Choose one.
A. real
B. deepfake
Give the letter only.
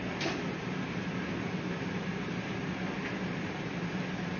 A